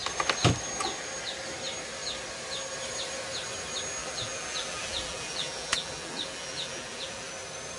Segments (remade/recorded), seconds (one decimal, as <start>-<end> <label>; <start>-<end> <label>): 0.0-4.0 recorded; 4.0-7.3 remade; 7.3-7.8 recorded

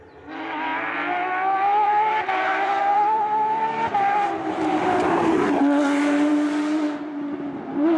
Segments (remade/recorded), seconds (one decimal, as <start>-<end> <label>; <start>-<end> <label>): 0.0-0.7 recorded; 0.7-5.5 remade; 5.5-8.0 recorded

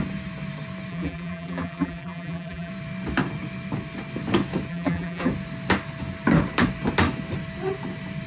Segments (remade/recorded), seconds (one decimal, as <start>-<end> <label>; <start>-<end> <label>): 0.0-0.9 recorded; 0.9-2.7 remade; 2.7-4.7 recorded; 4.7-5.3 remade; 5.3-8.3 recorded

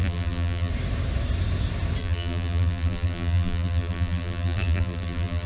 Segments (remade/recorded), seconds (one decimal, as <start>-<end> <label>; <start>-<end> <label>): 0.0-0.7 remade; 0.7-2.0 recorded; 2.0-5.5 remade

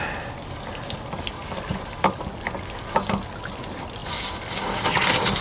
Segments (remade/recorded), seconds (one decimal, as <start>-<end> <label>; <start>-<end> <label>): 0.0-1.7 recorded; 1.7-2.2 remade; 2.2-5.4 recorded

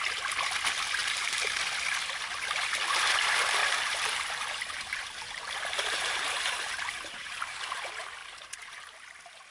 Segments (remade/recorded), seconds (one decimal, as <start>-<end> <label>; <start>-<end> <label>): 0.0-1.0 recorded; 1.0-1.6 remade; 1.6-3.6 recorded; 3.6-7.6 remade; 7.6-8.2 recorded; 8.2-8.8 remade; 8.8-9.5 recorded

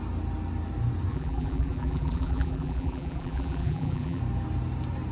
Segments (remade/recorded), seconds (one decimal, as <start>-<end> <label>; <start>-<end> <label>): 0.0-1.1 recorded; 1.1-4.2 remade; 4.2-5.1 recorded